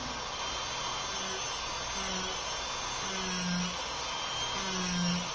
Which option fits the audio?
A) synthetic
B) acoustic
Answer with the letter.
B